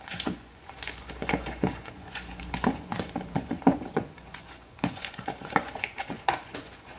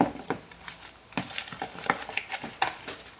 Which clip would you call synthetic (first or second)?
first